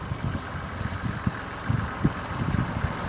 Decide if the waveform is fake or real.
real